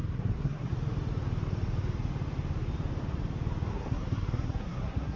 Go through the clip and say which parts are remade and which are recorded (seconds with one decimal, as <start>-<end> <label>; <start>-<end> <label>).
0.0-0.7 remade; 0.7-3.7 recorded; 3.7-5.2 remade